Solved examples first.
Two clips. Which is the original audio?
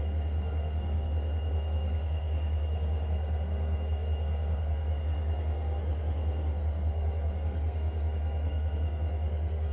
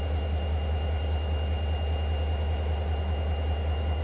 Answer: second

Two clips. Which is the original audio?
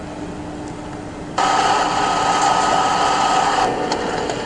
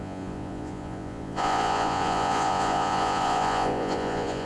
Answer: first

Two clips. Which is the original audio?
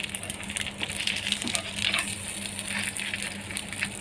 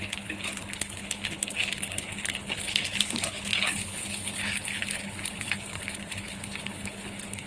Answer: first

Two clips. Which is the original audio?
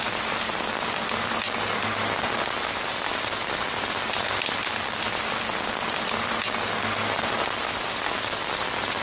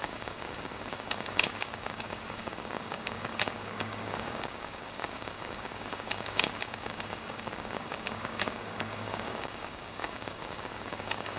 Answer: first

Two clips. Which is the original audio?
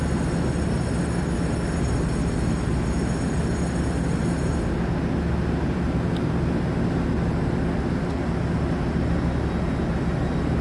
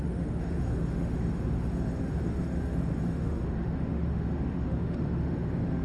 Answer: first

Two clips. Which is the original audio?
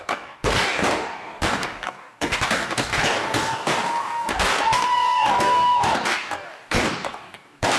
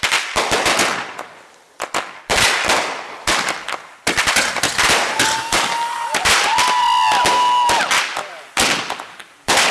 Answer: second